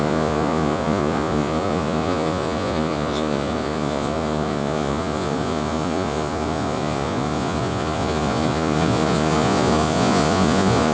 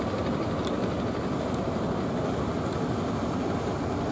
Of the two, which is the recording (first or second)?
second